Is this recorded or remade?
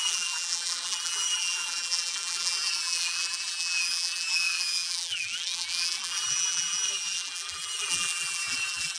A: remade